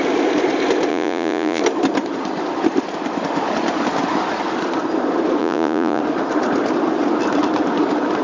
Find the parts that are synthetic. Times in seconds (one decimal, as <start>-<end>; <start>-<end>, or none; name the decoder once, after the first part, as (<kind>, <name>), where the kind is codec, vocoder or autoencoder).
0.9-1.6 (vocoder, Vocos); 5.4-6.0